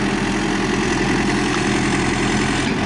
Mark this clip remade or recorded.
recorded